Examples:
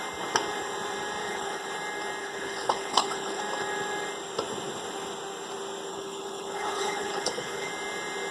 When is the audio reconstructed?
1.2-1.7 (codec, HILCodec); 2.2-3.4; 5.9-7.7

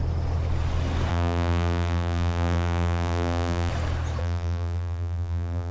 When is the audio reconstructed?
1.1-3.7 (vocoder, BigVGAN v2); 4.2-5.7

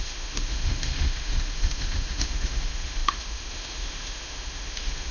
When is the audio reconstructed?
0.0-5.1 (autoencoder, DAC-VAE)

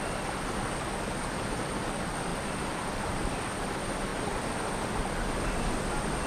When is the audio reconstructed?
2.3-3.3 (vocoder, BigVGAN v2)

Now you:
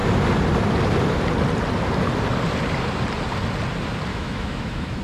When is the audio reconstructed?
4.1-5.0 (autoencoder, DAC-VAE)

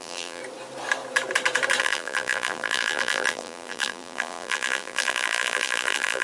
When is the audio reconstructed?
0.0-0.4 (vocoder, BigVGAN v2); 1.8-6.2